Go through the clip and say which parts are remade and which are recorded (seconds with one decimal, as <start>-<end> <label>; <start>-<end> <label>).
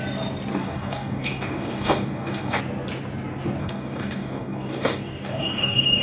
0.0-0.5 recorded; 0.5-2.6 remade; 2.6-3.6 recorded; 3.6-6.0 remade